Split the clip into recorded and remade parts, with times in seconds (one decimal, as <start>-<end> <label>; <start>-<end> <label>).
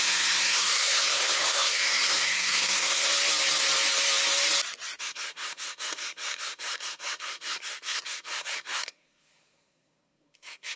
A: 0.0-3.1 remade; 3.1-5.0 recorded; 5.0-10.8 remade